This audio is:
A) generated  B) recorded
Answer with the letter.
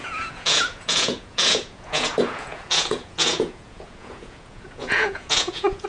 A